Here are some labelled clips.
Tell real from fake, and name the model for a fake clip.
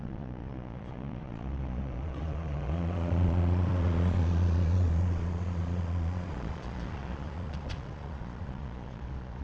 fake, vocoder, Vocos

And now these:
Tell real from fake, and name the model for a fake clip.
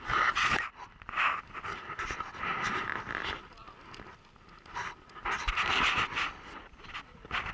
fake, vocoder, BigVGAN v2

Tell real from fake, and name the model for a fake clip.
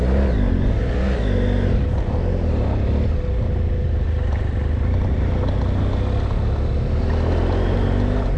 real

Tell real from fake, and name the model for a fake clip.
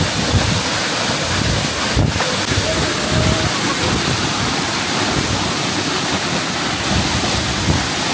real